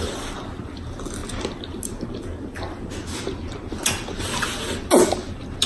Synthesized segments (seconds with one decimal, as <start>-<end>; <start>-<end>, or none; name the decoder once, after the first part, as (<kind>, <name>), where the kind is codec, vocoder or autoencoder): none